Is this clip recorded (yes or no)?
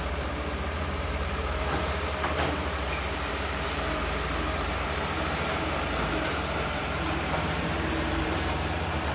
no